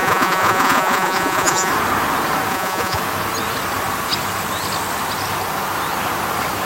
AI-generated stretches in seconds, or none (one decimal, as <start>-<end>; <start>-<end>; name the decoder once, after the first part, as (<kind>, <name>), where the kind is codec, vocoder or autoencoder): 0.0-1.7 (vocoder, Vocos); 2.5-3.0